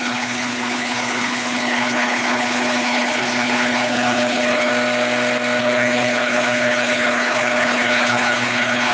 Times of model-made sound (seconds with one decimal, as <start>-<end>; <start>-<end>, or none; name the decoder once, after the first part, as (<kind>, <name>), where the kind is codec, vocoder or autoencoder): 0.0-4.7 (codec, HILCodec); 5.6-8.9